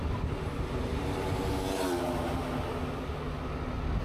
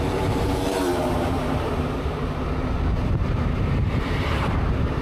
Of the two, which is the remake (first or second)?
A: second